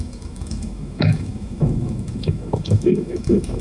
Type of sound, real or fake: fake